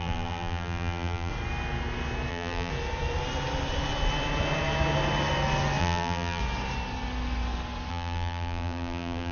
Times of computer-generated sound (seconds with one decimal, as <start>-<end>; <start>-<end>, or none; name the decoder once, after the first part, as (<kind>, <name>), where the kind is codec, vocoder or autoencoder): 0.0-1.3 (vocoder, BigVGAN v2); 2.3-2.7; 5.8-6.4; 7.9-9.3